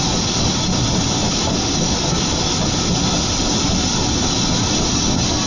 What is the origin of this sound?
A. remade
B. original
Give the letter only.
B